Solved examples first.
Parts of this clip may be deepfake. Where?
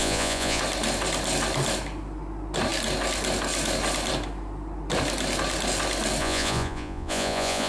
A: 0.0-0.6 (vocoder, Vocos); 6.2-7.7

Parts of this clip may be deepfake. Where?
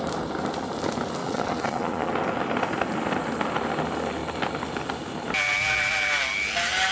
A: 1.2-2.1 (vocoder, Vocos)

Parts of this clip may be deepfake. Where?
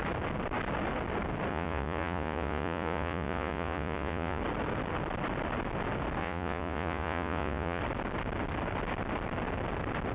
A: 1.5-4.4 (vocoder, Vocos); 6.2-7.8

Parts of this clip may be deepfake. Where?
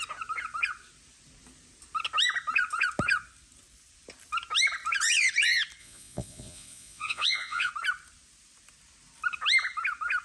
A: 5.8-7.7 (vocoder, Vocos)